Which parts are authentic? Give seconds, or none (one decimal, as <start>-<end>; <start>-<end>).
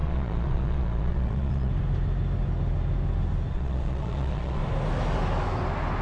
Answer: 1.7-3.5; 4.6-6.0